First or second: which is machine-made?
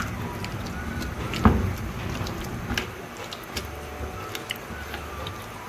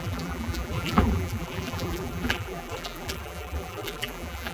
second